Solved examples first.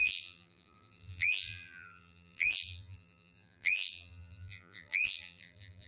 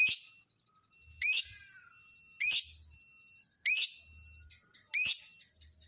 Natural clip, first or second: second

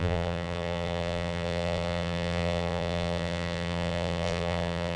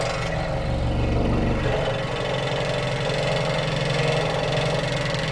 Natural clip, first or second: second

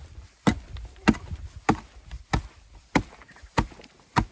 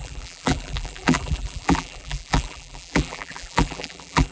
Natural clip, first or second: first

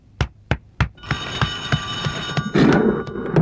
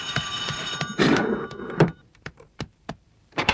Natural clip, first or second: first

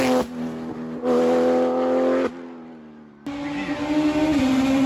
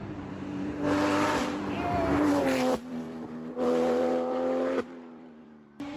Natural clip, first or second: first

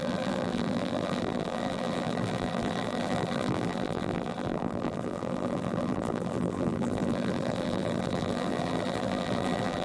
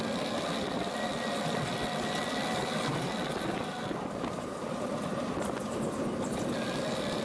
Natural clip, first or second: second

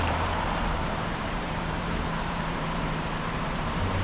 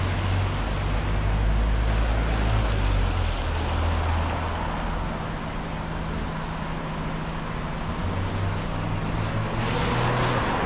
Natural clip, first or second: second